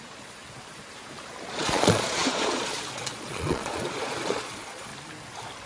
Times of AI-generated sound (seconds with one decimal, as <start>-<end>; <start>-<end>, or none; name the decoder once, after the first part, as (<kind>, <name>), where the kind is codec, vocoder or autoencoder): 0.0-0.4 (vocoder, Vocos); 1.5-4.9